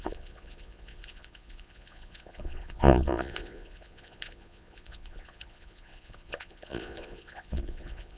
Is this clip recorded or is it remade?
remade